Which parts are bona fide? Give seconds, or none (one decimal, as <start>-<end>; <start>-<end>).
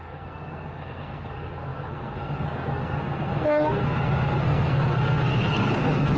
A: none